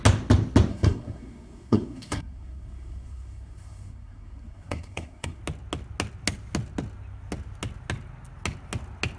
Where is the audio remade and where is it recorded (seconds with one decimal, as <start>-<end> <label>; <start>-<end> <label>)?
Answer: 0.0-0.7 recorded; 0.7-5.4 remade; 5.4-9.2 recorded